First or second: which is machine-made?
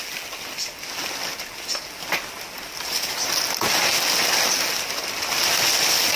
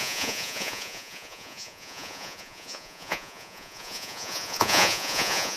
second